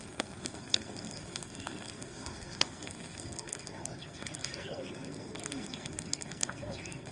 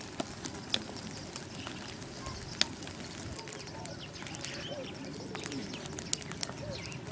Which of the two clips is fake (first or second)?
first